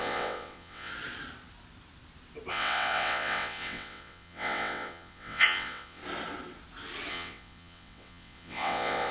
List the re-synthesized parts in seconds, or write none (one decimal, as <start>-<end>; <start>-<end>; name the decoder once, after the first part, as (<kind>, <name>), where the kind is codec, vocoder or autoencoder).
0.0-0.9 (vocoder, WaveNeXt); 2.5-6.0; 7.1-9.1